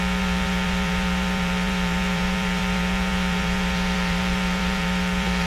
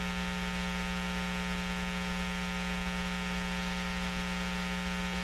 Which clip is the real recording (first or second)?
second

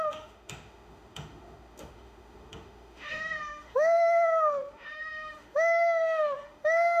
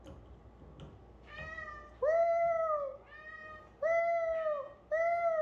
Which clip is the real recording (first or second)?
second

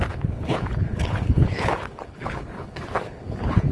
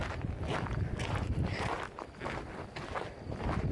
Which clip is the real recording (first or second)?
second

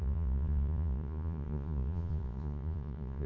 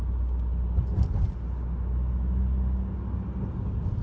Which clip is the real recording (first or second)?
second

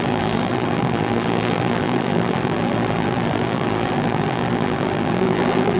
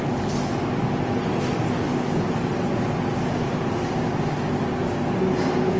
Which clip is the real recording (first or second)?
second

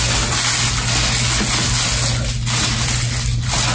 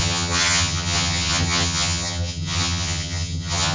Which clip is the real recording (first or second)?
first